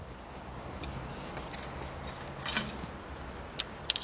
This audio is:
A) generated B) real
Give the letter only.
B